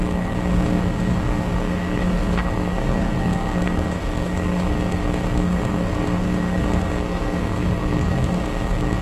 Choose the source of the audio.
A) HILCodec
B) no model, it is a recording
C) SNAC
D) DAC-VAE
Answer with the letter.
C